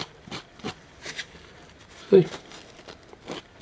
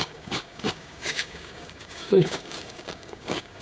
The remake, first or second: second